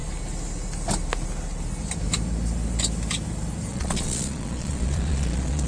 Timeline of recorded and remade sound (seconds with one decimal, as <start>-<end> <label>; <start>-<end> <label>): 0.0-3.7 recorded; 3.7-5.7 remade